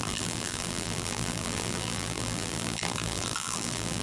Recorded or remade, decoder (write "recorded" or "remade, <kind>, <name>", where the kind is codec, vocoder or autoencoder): remade, vocoder, BigVGAN v2